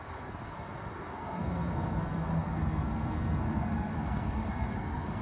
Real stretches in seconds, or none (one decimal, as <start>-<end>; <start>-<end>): none